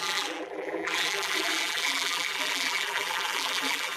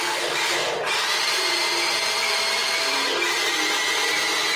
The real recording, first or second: second